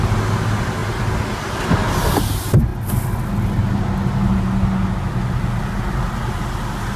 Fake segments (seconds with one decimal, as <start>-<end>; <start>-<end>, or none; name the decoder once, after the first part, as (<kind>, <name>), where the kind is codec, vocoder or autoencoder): none